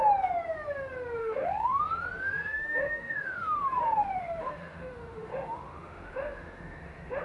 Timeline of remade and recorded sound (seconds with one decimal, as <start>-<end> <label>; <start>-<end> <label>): 0.0-1.2 recorded; 1.2-1.8 remade; 1.8-2.2 recorded; 2.2-3.6 remade; 3.6-4.0 recorded; 4.0-7.2 remade

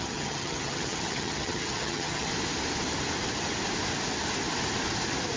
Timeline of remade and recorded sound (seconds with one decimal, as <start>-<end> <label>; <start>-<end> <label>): 0.0-2.3 remade; 2.3-5.4 recorded